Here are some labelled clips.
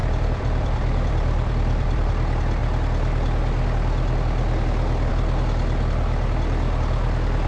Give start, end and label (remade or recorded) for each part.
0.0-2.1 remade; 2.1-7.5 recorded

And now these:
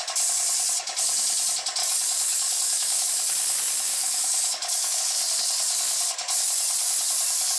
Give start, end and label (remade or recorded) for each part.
0.0-1.8 recorded; 1.8-3.1 remade; 3.1-3.9 recorded; 3.9-5.0 remade; 5.0-7.6 recorded

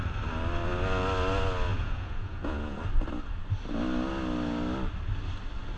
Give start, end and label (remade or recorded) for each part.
0.0-1.7 recorded; 1.7-2.8 remade; 2.8-5.8 recorded

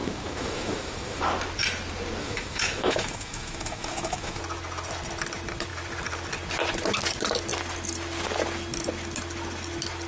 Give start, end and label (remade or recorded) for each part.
0.0-1.2 remade; 1.2-2.2 recorded; 2.2-4.4 remade; 4.4-10.1 recorded

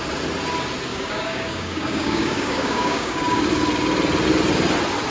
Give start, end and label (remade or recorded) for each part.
0.0-0.9 recorded; 0.9-3.4 remade; 3.4-5.1 recorded

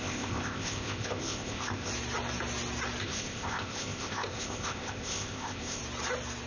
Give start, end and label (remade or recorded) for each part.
0.0-1.9 remade; 1.9-3.0 recorded; 3.0-5.8 remade; 5.8-6.5 recorded

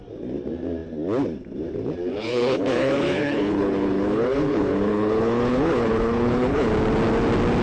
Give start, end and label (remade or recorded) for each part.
0.0-2.1 recorded; 2.1-6.7 remade; 6.7-7.6 recorded